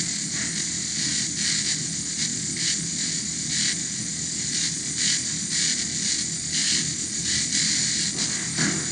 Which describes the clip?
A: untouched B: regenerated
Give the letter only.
A